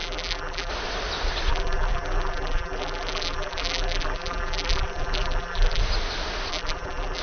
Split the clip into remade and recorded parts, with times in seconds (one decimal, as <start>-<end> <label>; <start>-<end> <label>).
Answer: 0.0-0.7 remade; 0.7-1.5 recorded; 1.5-5.8 remade; 5.8-6.5 recorded; 6.5-7.2 remade

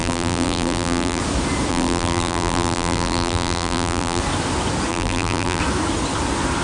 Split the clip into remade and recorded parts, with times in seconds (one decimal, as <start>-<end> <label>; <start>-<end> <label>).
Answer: 0.0-1.2 remade; 1.2-1.7 recorded; 1.7-4.2 remade; 4.2-4.9 recorded; 4.9-5.6 remade; 5.6-6.6 recorded

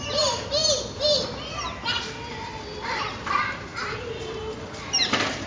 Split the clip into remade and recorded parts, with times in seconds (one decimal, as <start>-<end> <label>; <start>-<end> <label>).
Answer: 0.0-0.6 remade; 0.6-2.3 recorded; 2.3-5.5 remade

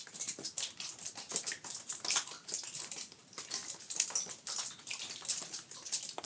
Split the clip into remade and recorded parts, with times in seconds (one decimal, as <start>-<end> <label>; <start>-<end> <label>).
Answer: 0.0-6.3 recorded